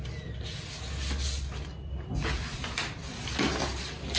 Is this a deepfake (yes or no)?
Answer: no